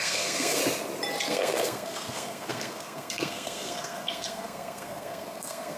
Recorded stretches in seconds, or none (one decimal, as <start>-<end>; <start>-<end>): 0.6-1.3